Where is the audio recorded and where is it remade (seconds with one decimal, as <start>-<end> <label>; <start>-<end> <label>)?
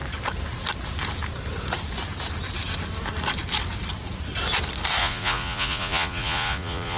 0.0-5.0 recorded; 5.0-7.0 remade